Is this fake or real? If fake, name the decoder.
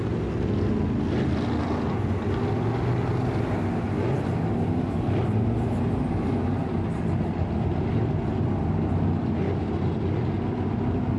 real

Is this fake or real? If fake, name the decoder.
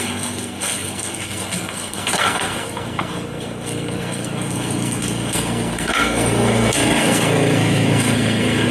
fake, codec, SNAC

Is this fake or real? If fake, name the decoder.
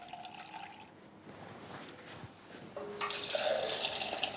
real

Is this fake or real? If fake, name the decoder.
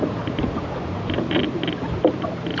real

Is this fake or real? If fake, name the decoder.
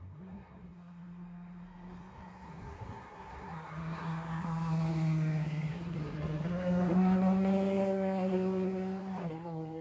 fake, codec, SNAC